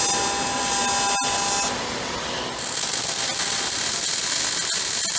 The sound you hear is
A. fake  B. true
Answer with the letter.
B